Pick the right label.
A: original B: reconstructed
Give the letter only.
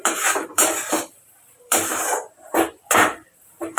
B